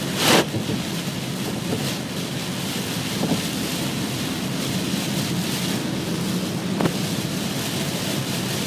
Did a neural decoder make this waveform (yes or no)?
no